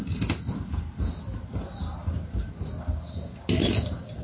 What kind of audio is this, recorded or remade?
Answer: recorded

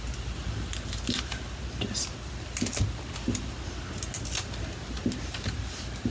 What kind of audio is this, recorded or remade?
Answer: recorded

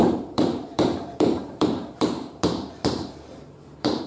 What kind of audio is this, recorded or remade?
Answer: remade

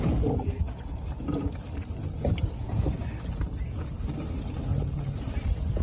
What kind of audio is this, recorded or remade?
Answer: recorded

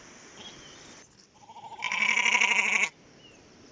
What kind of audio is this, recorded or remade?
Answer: recorded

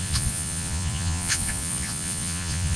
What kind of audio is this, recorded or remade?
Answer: remade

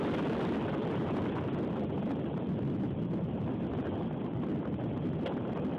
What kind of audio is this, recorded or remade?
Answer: remade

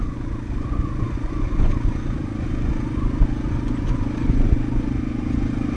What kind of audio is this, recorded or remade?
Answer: remade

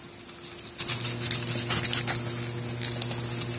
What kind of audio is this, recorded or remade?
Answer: recorded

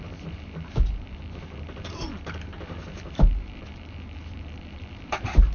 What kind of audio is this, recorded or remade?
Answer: remade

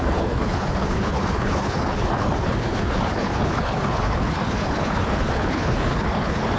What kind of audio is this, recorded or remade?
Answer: remade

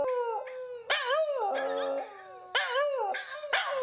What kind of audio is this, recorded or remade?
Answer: recorded